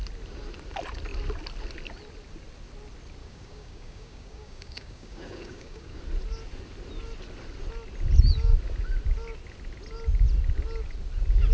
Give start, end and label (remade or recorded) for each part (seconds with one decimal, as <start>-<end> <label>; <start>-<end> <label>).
0.0-3.2 recorded; 3.2-6.0 remade; 6.0-11.5 recorded